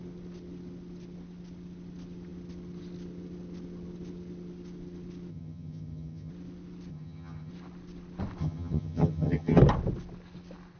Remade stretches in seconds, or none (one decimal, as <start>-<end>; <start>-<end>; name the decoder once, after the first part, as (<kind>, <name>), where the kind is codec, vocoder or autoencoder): 5.3-6.3 (vocoder, HiFi-GAN); 6.9-7.5; 8.4-9.6